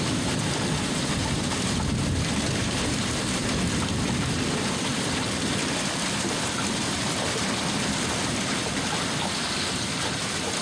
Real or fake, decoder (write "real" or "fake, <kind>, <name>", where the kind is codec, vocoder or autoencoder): fake, vocoder, BigVGAN v2